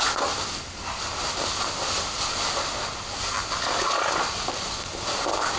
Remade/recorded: recorded